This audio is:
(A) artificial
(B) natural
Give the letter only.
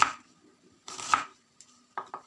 A